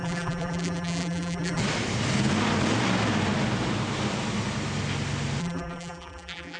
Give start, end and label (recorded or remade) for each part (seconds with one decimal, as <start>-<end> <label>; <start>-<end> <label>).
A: 0.0-1.6 remade; 1.6-5.4 recorded; 5.4-6.6 remade